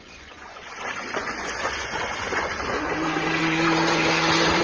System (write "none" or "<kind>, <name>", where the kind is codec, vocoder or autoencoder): vocoder, Vocos